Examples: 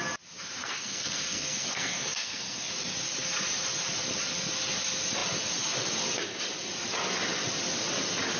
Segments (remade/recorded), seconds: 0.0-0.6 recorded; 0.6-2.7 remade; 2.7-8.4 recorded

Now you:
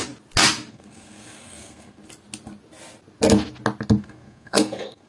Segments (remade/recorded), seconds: 0.0-0.7 recorded; 0.7-2.0 remade; 2.0-4.0 recorded; 4.0-5.1 remade

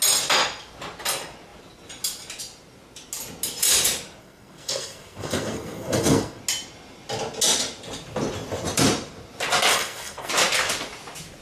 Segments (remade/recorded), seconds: 0.0-4.2 recorded; 4.2-6.4 remade; 6.4-9.7 recorded; 9.7-10.3 remade; 10.3-11.4 recorded

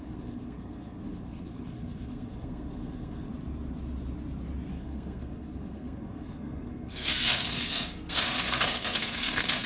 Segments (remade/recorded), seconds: 0.0-3.3 remade; 3.3-4.7 recorded; 4.7-9.7 remade

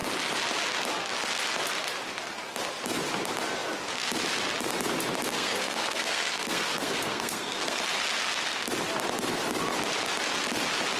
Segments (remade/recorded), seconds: 0.0-5.3 recorded; 5.3-7.8 remade; 7.8-11.0 recorded

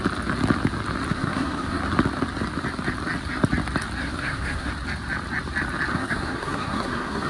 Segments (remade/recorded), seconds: 0.0-1.1 recorded; 1.1-1.8 remade; 1.8-4.0 recorded; 4.0-4.7 remade; 4.7-5.9 recorded; 5.9-7.3 remade

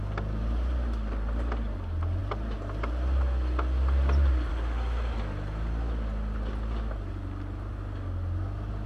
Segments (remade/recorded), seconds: 0.0-8.9 recorded

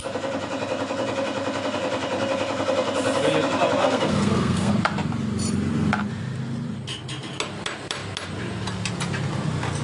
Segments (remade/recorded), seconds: 0.0-3.8 recorded; 3.8-4.7 remade; 4.7-9.8 recorded